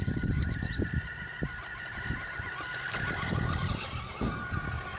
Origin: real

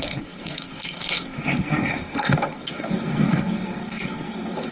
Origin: fake